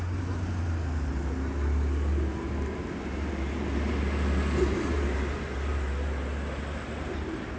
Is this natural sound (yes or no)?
yes